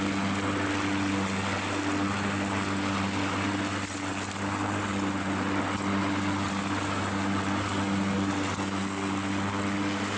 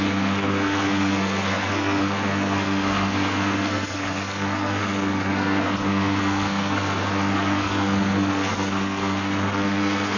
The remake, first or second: second